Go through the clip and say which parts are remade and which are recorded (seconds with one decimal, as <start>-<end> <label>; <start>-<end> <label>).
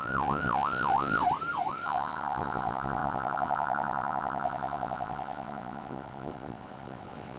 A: 0.0-1.2 remade; 1.2-1.7 recorded; 1.7-7.4 remade